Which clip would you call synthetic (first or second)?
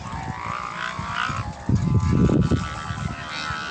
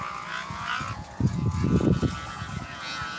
second